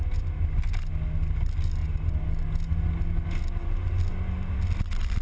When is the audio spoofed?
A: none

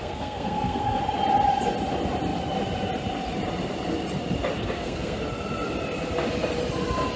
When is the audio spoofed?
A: 0.0-1.0; 4.6-5.2

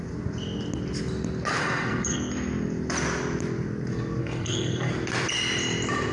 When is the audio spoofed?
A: 1.6-2.3; 4.2-4.9

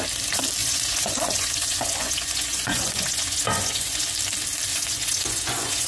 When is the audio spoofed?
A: 0.6-4.1; 4.7-5.9

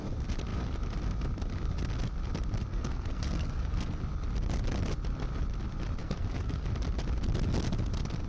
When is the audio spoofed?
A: 2.7-4.0; 6.0-6.7

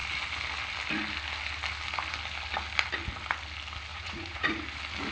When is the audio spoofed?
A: 3.9-4.6

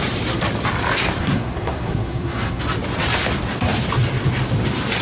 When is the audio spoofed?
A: 1.2-2.6